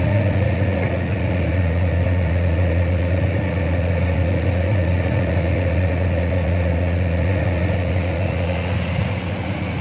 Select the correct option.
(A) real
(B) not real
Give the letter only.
B